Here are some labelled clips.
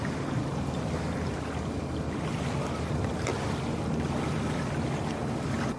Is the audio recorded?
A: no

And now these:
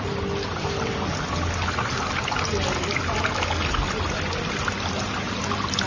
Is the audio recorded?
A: yes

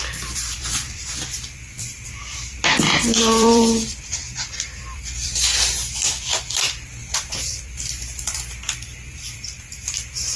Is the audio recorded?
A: no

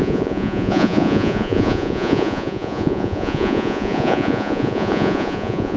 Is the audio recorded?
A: no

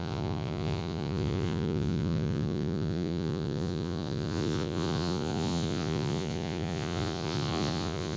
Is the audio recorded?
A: no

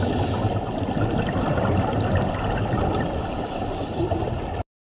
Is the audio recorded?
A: yes